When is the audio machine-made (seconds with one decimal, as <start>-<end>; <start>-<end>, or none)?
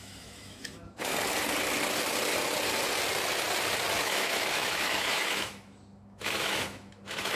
0.0-1.1; 4.0-7.4